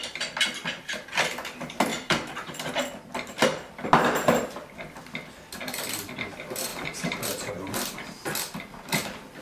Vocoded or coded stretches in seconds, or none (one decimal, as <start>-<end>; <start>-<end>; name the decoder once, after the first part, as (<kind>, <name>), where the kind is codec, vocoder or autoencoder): 1.9-2.7 (vocoder, BigVGAN v2); 6.7-7.5